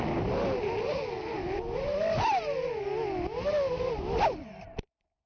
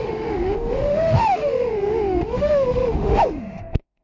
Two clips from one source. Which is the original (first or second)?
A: first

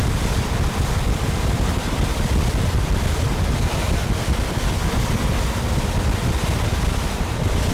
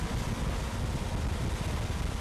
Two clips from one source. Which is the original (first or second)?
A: second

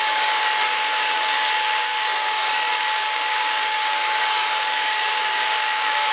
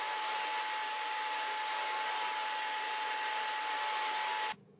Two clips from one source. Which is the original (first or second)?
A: second